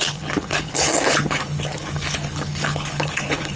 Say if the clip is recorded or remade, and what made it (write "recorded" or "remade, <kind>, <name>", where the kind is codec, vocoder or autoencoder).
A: remade, codec, HILCodec